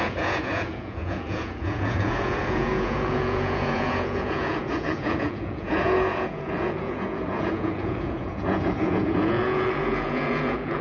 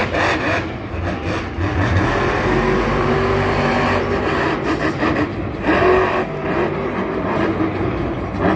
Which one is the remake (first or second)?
first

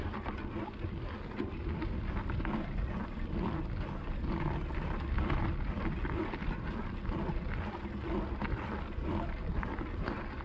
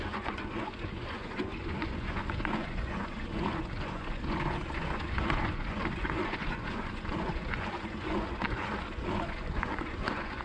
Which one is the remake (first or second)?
second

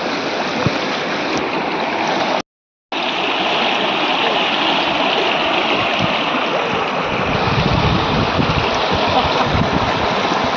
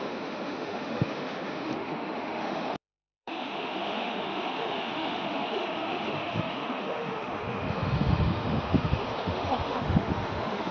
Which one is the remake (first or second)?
second